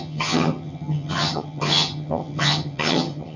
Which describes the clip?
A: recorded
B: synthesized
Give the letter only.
B